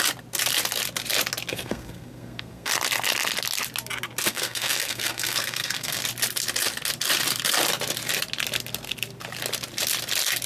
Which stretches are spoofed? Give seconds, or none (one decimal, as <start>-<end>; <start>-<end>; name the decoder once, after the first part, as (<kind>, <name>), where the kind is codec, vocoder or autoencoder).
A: 1.5-2.7 (codec, SNAC); 4.3-6.0